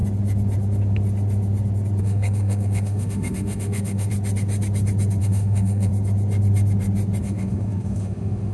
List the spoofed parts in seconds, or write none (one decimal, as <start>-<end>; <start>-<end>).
2.0-4.1; 5.2-5.9; 7.2-8.5